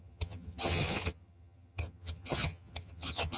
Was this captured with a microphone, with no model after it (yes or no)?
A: no